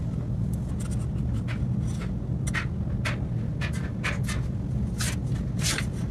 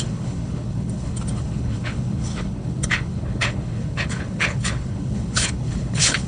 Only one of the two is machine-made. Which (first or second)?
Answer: second